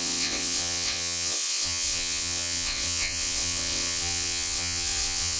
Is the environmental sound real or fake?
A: fake